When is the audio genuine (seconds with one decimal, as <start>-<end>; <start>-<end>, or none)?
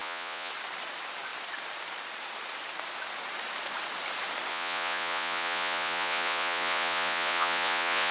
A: 0.5-4.5